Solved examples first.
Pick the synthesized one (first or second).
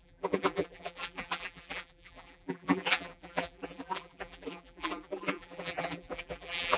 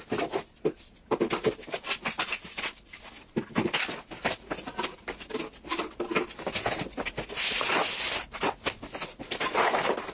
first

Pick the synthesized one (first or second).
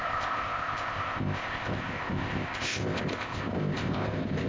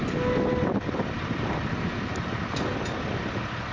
first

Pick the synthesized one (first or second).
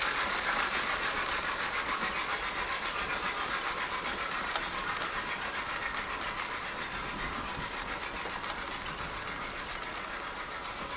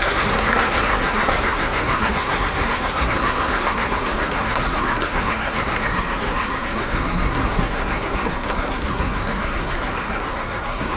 second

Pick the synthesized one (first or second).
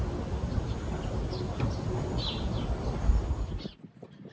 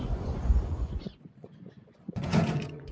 second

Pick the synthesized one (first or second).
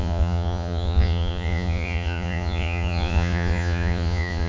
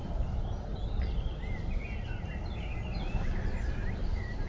first